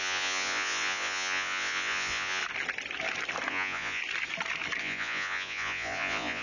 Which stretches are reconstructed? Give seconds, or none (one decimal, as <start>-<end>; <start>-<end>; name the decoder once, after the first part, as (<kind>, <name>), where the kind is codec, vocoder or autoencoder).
0.0-2.4 (vocoder, Vocos); 3.5-4.0; 4.8-6.4